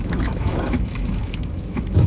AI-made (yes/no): yes